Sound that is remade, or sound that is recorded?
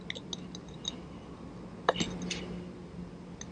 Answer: recorded